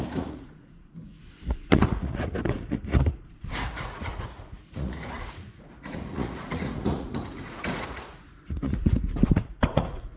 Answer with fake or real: fake